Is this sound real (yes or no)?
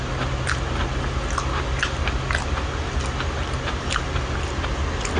yes